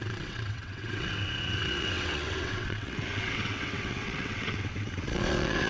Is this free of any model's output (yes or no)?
no